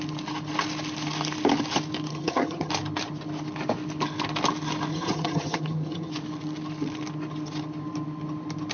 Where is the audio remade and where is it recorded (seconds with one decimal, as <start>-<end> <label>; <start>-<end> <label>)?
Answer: 0.0-2.1 recorded; 2.1-2.7 remade; 2.7-4.9 recorded; 4.9-6.1 remade; 6.1-8.7 recorded